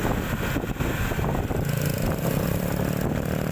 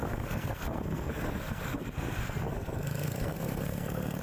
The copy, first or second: second